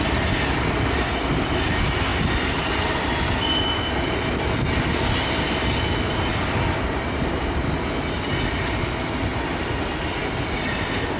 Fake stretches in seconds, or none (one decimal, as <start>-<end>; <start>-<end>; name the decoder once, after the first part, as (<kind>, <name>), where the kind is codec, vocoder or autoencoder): none